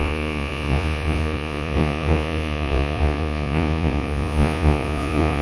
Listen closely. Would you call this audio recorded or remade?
remade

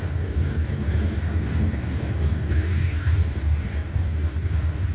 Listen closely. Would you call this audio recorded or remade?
remade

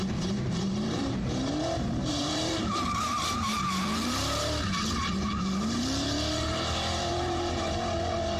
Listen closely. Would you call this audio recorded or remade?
remade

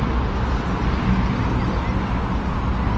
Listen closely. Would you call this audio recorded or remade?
recorded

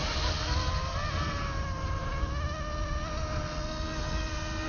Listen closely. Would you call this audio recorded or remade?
recorded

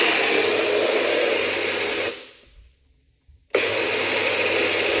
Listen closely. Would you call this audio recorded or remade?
recorded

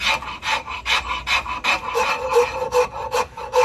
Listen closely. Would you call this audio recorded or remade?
remade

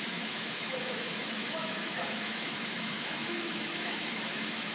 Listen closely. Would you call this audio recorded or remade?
remade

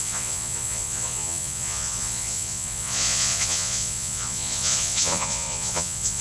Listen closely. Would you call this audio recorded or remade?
remade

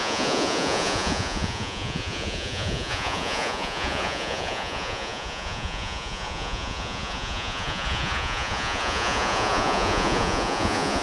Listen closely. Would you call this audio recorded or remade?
remade